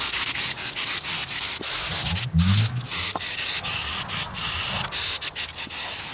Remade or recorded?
recorded